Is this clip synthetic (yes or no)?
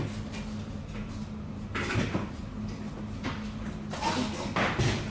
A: no